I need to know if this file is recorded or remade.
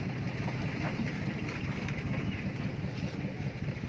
recorded